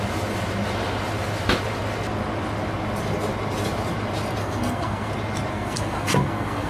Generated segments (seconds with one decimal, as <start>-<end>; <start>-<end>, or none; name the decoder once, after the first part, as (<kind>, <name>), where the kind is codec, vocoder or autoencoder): 4.4-5.1 (codec, SNAC); 5.5-6.7